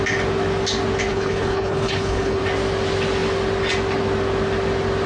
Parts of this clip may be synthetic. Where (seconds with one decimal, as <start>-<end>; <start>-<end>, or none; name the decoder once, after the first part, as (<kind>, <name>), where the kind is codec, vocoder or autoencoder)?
1.1-2.4 (codec, HILCodec)